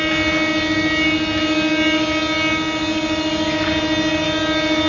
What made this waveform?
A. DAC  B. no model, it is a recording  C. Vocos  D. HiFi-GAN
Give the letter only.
B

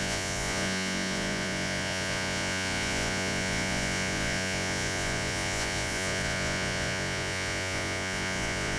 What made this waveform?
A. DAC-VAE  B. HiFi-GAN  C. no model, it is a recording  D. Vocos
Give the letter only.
D